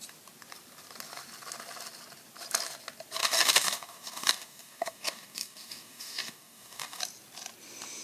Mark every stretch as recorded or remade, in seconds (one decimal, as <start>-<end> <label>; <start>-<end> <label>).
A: 0.0-3.2 recorded; 3.2-7.0 remade; 7.0-8.0 recorded